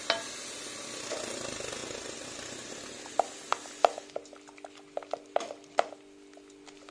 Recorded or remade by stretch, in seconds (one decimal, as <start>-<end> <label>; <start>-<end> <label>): 0.0-6.9 recorded